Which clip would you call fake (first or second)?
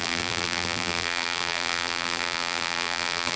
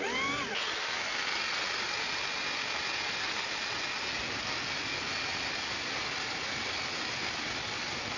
first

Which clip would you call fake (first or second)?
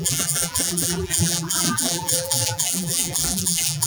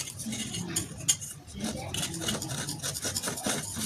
first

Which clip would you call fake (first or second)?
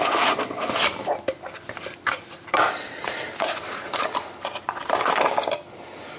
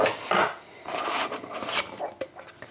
first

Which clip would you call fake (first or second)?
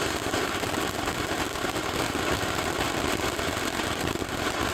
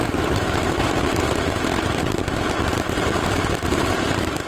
second